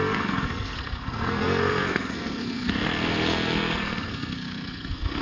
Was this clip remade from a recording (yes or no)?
yes